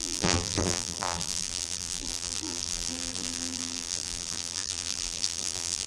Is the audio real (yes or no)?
no